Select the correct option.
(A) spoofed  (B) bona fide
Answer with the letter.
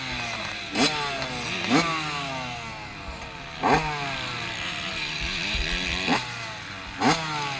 B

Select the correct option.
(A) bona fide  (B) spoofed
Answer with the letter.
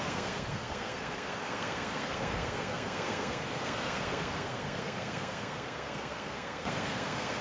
B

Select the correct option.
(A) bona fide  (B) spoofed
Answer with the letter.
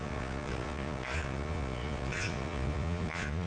B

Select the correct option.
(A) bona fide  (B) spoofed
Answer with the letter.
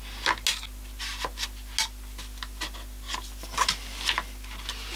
A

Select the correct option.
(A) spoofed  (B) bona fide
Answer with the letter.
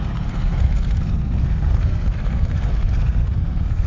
A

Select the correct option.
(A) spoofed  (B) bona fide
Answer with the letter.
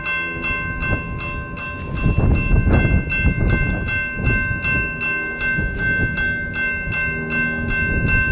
B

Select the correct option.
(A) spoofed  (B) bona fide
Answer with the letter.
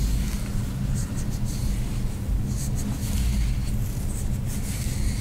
B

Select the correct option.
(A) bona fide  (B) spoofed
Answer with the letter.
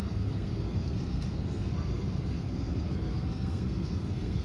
B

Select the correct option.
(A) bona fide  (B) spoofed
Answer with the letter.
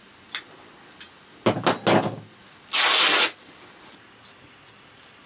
A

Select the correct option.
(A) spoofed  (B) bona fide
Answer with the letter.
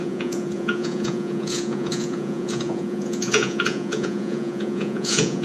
A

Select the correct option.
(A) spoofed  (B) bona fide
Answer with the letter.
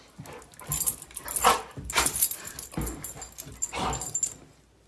B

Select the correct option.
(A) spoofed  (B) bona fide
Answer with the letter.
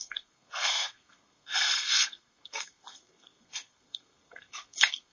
A